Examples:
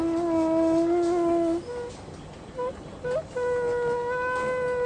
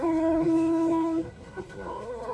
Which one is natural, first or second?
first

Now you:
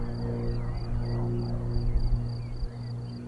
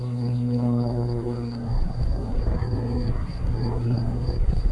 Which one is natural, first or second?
first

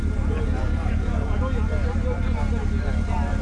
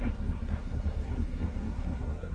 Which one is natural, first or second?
first